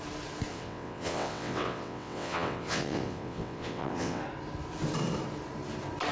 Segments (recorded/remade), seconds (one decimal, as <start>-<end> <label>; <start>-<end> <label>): 0.0-0.5 recorded; 0.5-4.2 remade; 4.2-6.1 recorded